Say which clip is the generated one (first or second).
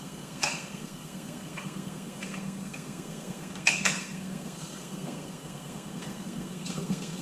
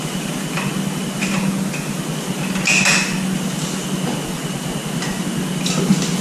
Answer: first